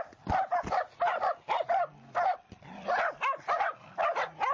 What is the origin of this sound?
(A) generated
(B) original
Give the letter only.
B